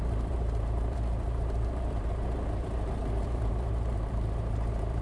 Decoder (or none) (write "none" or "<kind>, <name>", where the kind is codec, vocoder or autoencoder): vocoder, BigVGAN v2